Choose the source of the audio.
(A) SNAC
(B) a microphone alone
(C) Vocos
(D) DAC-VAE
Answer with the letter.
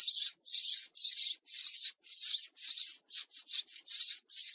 B